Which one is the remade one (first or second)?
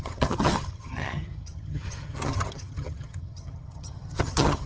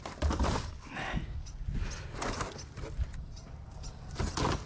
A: first